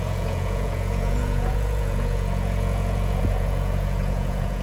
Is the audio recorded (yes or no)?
no